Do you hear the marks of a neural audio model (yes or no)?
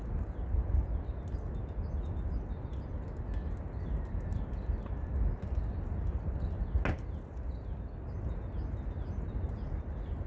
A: no